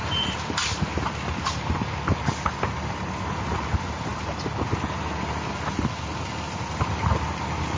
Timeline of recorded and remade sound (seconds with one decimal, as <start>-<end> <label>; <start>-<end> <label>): 0.0-7.8 recorded